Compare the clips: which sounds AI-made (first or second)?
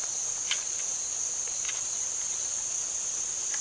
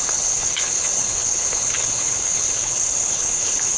second